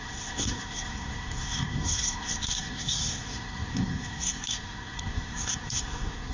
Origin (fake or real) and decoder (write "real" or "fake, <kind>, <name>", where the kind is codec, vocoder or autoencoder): fake, codec, SNAC